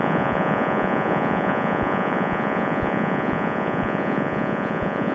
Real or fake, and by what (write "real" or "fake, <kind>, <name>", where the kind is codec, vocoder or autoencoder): fake, vocoder, Vocos